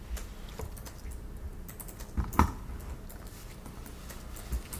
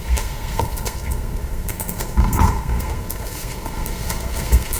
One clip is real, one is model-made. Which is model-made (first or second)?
second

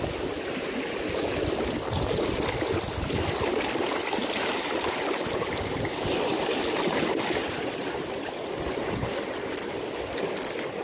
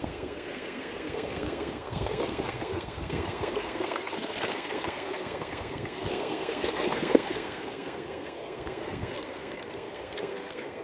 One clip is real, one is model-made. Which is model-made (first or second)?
second